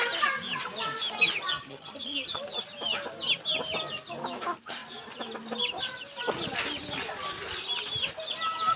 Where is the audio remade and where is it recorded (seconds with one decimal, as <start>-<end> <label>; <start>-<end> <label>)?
0.0-1.5 recorded; 1.5-2.4 remade; 2.4-8.8 recorded